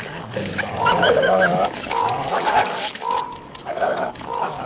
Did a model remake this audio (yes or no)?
yes